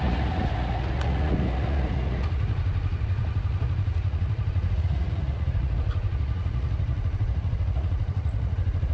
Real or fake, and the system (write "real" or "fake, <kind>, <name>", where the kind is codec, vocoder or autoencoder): fake, vocoder, Vocos